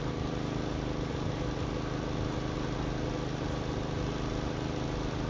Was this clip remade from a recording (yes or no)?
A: no